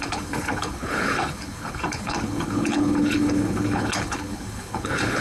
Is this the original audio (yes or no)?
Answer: no